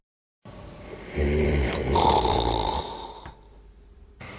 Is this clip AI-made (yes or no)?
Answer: yes